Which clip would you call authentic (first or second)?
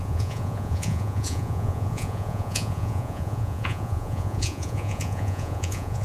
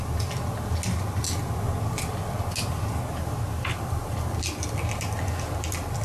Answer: second